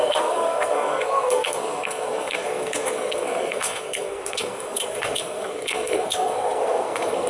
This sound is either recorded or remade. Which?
remade